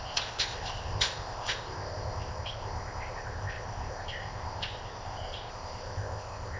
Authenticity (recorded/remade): remade